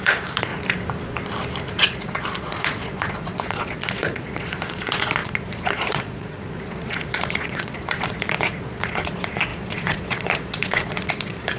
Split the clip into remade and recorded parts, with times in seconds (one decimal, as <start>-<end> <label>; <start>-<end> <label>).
0.0-0.5 remade; 0.5-1.8 recorded; 1.8-11.6 remade

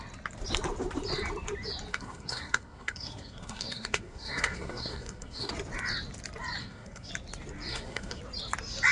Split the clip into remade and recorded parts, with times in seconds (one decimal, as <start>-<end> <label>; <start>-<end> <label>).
0.0-1.9 recorded; 1.9-5.5 remade; 5.5-6.6 recorded; 6.6-7.1 remade; 7.1-7.7 recorded; 7.7-8.2 remade; 8.2-8.9 recorded

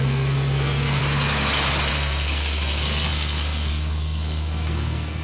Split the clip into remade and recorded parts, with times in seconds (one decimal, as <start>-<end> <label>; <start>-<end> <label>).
0.0-1.0 remade; 1.0-1.9 recorded; 1.9-5.2 remade

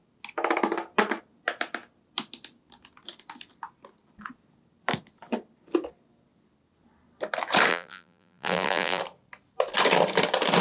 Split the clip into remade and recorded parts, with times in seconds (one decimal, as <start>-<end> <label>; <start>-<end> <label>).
0.0-7.7 recorded; 7.7-9.0 remade; 9.0-10.6 recorded

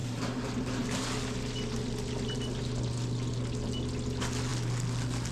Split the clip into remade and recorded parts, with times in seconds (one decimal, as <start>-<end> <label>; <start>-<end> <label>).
0.0-1.0 remade; 1.0-5.3 recorded